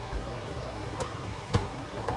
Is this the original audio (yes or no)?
no